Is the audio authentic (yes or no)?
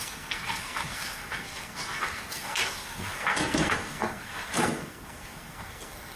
no